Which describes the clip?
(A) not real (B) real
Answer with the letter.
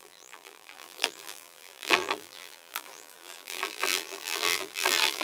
A